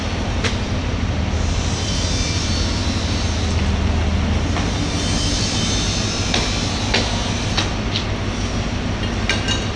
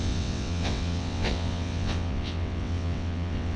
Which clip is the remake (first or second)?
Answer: second